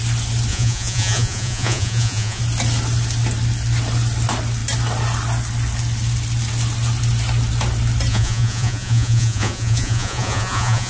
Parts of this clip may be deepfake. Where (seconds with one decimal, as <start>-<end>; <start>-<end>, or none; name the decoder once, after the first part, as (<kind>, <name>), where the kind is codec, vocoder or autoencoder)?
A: 0.5-2.4 (vocoder, Vocos); 8.1-10.9